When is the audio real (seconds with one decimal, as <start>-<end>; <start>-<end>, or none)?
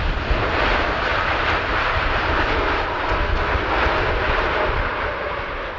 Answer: 0.0-2.9; 3.5-5.8